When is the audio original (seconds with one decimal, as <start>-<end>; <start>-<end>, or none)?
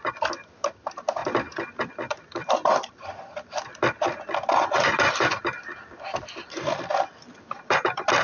0.0-8.2